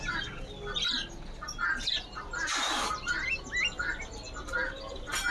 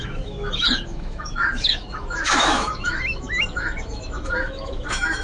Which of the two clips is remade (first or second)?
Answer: second